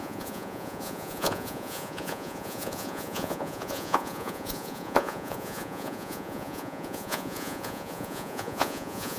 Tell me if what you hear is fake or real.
fake